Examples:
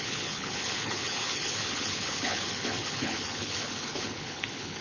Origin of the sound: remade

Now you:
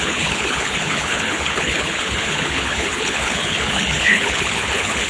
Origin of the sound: remade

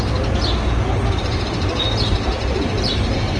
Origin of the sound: recorded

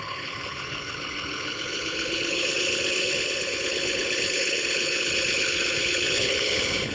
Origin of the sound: remade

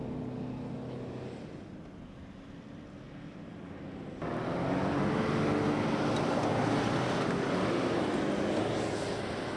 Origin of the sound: recorded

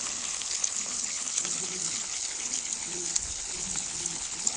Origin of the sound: remade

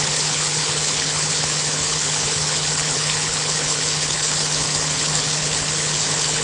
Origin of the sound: remade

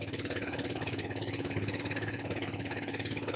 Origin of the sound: remade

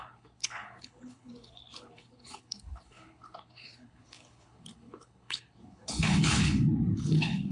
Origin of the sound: remade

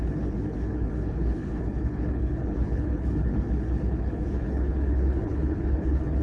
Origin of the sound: remade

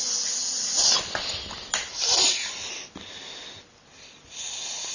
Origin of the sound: recorded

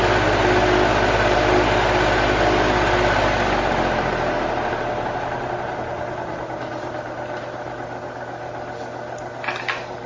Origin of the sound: recorded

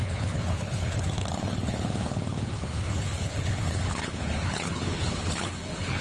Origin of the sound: remade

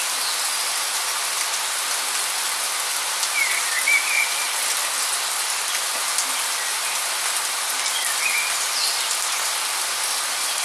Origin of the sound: recorded